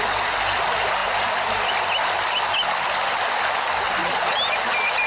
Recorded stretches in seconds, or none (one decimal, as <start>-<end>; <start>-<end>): 0.0-5.1